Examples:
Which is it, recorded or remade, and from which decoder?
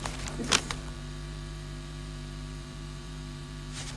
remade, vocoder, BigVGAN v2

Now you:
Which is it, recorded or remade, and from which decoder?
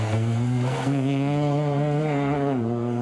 remade, codec, SNAC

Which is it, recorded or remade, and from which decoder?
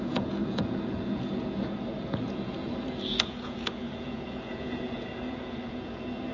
remade, vocoder, Vocos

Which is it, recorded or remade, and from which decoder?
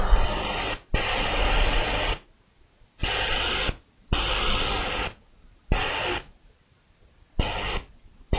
recorded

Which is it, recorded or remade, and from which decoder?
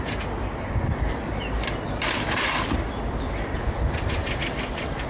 remade, vocoder, BigVGAN v2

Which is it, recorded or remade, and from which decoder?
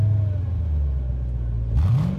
recorded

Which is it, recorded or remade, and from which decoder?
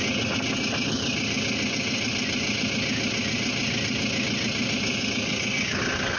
recorded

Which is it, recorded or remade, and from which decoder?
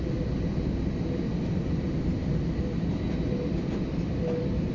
recorded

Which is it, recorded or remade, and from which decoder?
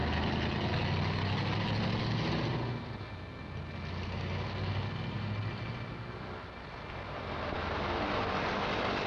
recorded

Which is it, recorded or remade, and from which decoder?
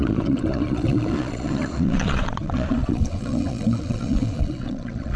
remade, vocoder, Vocos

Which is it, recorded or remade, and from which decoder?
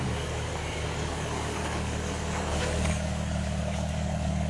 remade, codec, DAC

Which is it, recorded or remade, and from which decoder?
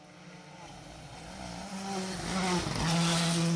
recorded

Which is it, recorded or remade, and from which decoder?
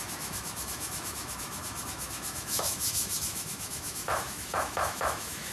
remade, autoencoder, DAC-VAE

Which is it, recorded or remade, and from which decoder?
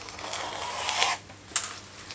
recorded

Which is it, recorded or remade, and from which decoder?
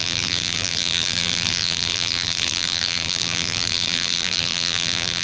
remade, vocoder, BigVGAN v2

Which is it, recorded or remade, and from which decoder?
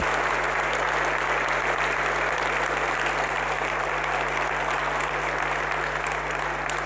recorded